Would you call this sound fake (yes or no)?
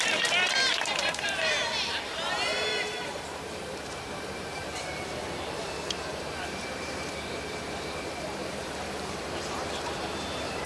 yes